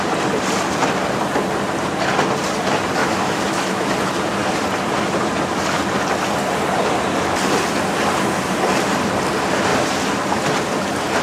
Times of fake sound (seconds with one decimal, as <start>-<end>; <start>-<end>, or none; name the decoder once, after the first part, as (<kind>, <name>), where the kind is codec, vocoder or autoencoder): 3.0-3.9 (autoencoder, DAC-VAE)